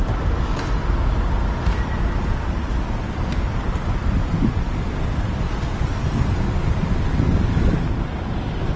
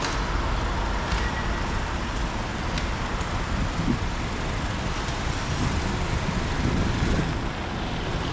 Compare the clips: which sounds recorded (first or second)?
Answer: second